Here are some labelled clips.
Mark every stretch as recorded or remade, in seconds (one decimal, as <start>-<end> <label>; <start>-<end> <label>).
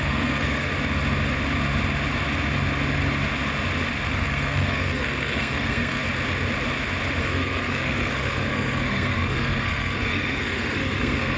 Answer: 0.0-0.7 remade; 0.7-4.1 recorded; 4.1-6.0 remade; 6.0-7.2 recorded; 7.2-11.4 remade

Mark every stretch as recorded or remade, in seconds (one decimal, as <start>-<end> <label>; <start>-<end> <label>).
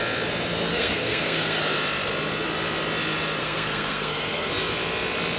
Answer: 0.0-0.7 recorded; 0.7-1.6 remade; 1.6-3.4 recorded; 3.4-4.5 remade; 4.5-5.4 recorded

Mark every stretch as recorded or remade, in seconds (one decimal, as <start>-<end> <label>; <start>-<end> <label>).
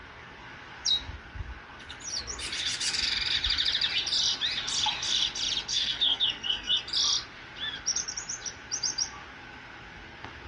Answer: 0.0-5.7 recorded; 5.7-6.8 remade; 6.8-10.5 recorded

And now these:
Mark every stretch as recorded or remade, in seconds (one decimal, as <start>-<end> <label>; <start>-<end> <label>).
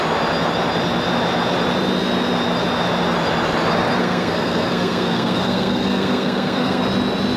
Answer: 0.0-4.0 recorded; 4.0-6.8 remade; 6.8-7.4 recorded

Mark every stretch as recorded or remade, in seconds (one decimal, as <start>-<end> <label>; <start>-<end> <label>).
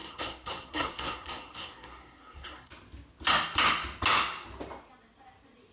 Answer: 0.0-2.7 remade; 2.7-5.7 recorded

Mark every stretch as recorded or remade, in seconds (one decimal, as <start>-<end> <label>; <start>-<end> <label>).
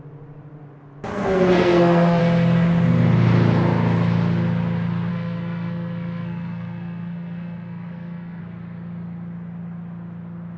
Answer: 0.0-1.1 recorded; 1.1-2.2 remade; 2.2-5.1 recorded; 5.1-8.4 remade; 8.4-10.6 recorded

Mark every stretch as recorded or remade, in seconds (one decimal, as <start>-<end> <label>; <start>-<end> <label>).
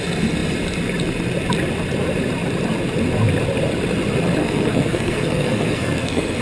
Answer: 0.0-4.4 recorded; 4.4-6.4 remade